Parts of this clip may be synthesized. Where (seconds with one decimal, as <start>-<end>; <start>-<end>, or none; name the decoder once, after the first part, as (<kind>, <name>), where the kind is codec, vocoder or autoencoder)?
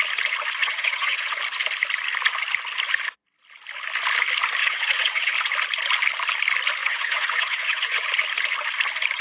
0.6-1.3 (vocoder, WaveNeXt); 4.6-5.3; 6.8-8.1